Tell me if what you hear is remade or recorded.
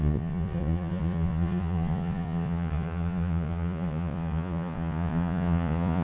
remade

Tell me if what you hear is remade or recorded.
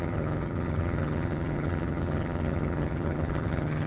remade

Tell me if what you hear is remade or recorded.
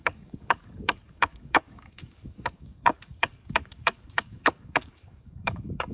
remade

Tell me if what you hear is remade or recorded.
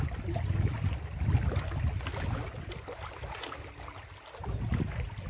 recorded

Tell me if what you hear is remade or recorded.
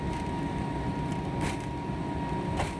recorded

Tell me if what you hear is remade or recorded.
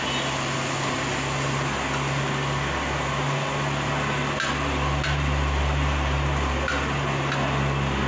recorded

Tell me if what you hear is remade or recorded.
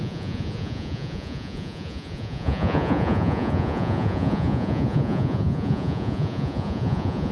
remade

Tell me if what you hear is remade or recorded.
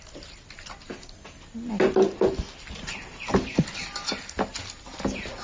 recorded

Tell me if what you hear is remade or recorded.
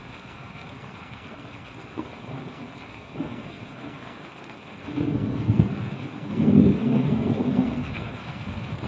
remade